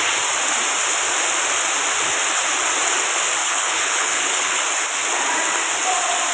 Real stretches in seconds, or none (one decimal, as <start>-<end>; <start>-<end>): 0.0-3.4; 4.6-6.3